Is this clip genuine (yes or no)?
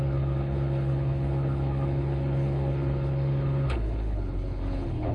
no